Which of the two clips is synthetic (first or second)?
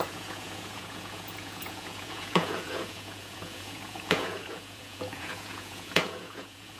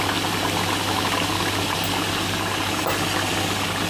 first